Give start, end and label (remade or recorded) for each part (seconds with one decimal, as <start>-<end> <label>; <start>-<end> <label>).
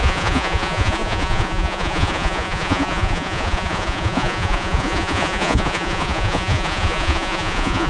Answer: 0.0-7.9 remade